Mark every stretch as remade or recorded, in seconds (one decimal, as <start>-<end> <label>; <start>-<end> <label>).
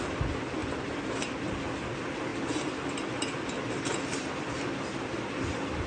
0.0-5.9 recorded